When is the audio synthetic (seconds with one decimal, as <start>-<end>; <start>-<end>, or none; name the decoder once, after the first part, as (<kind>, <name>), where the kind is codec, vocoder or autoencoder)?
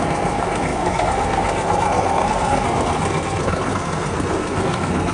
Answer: 0.0-5.1 (codec, SNAC)